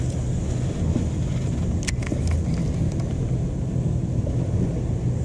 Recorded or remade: recorded